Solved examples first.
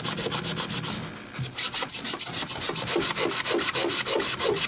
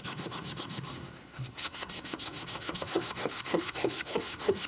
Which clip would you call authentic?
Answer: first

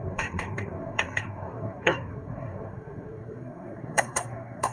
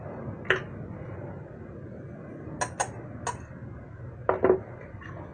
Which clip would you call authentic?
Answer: second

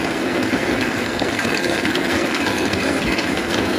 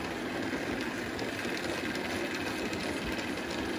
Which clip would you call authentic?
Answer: second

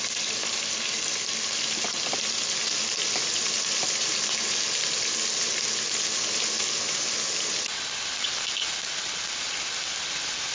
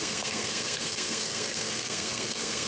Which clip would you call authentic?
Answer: first